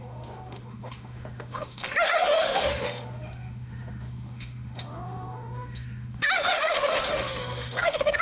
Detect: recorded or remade remade